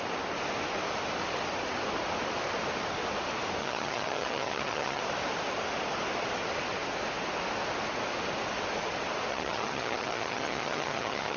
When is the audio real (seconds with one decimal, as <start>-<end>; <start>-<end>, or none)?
0.0-3.6; 5.0-9.3